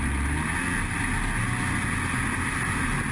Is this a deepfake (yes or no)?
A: no